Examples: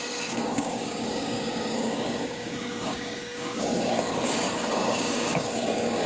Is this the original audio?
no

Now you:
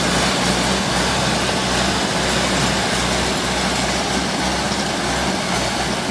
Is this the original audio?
yes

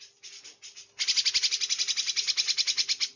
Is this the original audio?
yes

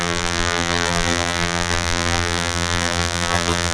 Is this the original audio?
no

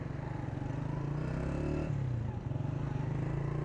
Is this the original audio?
yes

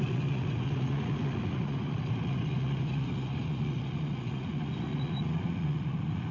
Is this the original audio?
no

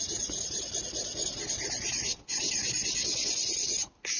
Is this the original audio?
yes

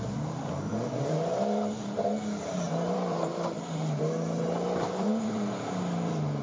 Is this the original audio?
no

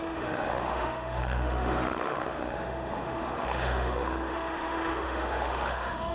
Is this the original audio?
no